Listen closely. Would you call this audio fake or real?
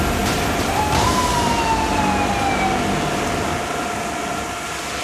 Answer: real